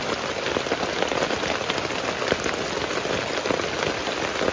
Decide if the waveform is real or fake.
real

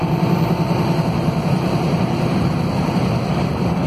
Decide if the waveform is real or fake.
fake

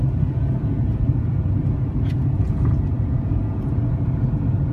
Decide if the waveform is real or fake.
fake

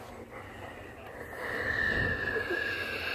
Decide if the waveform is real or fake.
real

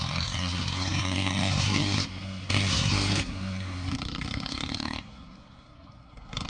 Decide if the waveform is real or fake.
fake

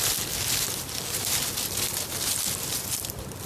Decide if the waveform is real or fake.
real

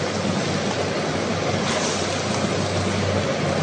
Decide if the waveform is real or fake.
real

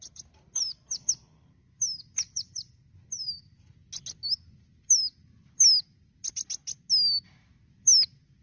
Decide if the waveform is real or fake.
real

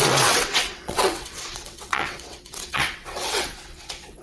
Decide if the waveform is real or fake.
fake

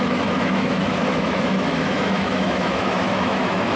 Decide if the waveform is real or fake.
fake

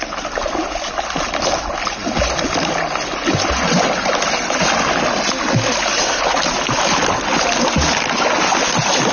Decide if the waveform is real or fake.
real